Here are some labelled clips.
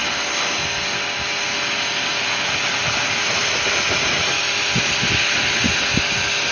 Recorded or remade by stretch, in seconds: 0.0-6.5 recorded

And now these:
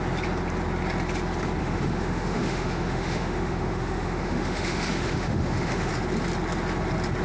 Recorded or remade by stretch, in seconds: 0.0-1.6 recorded; 1.6-5.9 remade; 5.9-7.2 recorded

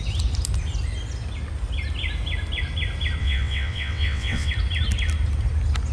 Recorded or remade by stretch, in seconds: 0.0-3.2 recorded; 3.2-4.5 remade; 4.5-5.9 recorded

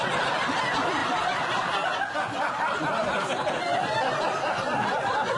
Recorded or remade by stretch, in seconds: 0.0-5.4 recorded